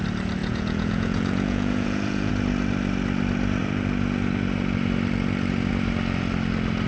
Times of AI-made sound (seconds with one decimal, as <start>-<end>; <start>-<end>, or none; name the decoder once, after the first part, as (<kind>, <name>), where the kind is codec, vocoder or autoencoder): 0.4-2.3 (vocoder, Vocos)